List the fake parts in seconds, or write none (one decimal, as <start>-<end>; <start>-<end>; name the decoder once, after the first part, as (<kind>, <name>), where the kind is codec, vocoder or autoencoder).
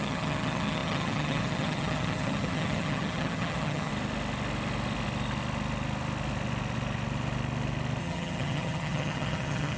0.0-3.9 (vocoder, HiFi-GAN); 8.0-9.8